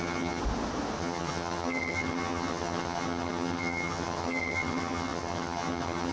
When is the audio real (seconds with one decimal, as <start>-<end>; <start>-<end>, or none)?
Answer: 0.4-1.0

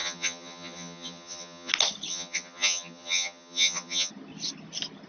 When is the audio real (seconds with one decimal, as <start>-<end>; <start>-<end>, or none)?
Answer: 1.7-2.1; 4.1-5.1

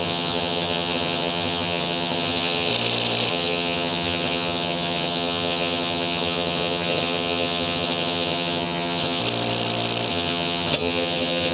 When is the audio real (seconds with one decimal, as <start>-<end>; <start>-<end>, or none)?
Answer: 2.7-3.3; 9.2-10.1

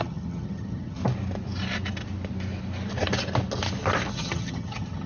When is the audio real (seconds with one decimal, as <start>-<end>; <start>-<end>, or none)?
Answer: 1.0-4.1

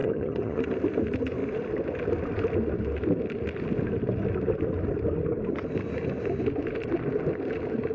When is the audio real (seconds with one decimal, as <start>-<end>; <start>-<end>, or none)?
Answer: 0.6-7.9

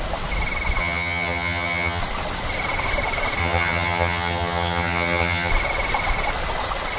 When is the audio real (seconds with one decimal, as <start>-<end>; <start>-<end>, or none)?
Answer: 0.0-0.8; 2.0-3.4; 5.5-7.0